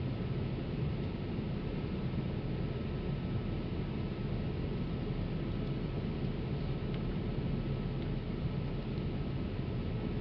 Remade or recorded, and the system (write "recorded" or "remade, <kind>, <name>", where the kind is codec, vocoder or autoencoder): recorded